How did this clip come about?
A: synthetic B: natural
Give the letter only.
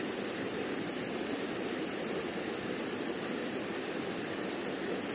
B